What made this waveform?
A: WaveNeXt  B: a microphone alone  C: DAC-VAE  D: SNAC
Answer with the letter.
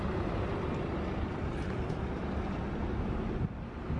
B